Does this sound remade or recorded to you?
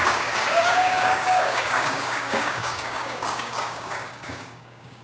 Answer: remade